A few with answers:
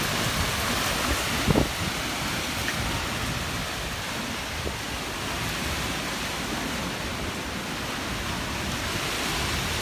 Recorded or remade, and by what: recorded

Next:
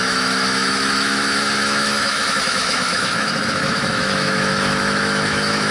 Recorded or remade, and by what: remade, autoencoder, DAC-VAE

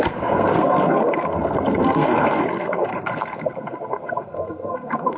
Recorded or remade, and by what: remade, codec, SNAC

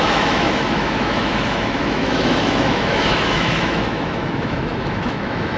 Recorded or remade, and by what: remade, autoencoder, DAC-VAE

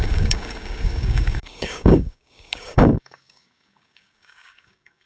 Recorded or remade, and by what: remade, codec, DAC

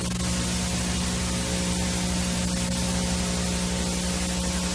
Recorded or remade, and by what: recorded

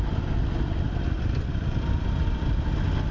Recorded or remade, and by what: recorded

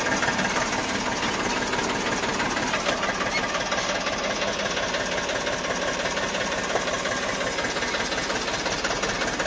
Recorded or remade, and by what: recorded